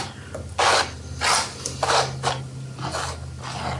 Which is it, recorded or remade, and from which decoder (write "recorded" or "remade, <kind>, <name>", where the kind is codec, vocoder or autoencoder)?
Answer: recorded